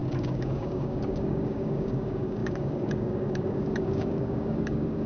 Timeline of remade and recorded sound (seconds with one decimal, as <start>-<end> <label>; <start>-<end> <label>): 0.0-5.1 remade